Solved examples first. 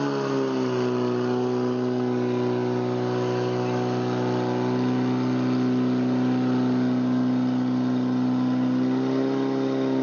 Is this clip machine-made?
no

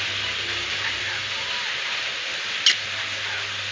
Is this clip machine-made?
yes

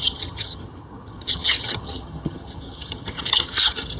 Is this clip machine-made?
yes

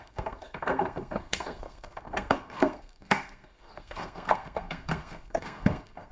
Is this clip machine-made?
yes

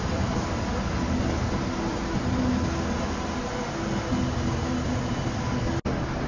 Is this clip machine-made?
no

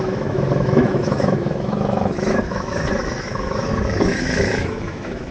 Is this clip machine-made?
yes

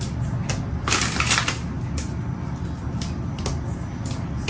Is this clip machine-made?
no